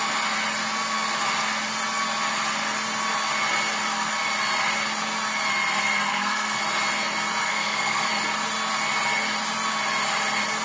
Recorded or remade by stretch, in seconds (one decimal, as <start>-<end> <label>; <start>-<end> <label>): 0.0-6.1 recorded; 6.1-6.6 remade; 6.6-7.5 recorded; 7.5-8.1 remade; 8.1-10.6 recorded